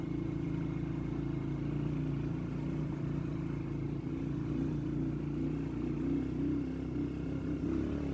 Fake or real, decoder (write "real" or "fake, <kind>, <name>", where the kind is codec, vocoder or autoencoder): real